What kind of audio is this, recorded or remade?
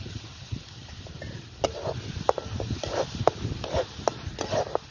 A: recorded